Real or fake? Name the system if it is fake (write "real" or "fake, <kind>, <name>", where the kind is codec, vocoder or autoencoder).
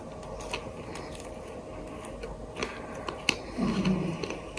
real